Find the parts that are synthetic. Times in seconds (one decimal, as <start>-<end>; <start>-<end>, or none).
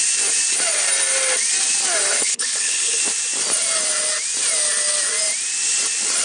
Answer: 2.1-3.0